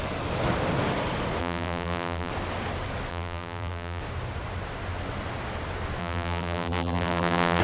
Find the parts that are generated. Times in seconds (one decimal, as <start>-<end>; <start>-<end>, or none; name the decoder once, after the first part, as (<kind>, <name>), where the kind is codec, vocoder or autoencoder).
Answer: 1.4-2.3 (vocoder, BigVGAN v2); 3.1-4.0; 6.0-7.6